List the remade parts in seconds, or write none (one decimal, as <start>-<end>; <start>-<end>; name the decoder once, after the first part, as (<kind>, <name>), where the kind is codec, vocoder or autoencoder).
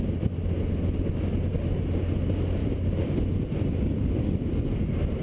2.6-4.5 (vocoder, BigVGAN v2)